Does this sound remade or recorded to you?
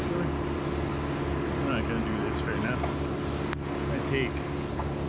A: recorded